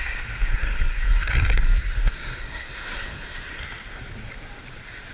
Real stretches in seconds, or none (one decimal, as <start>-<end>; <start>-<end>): 0.0-0.5; 3.6-5.1